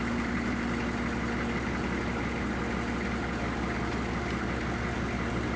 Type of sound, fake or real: real